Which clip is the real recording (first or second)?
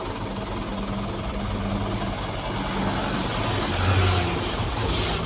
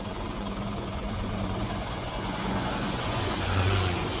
first